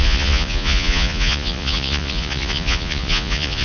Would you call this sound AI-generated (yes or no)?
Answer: yes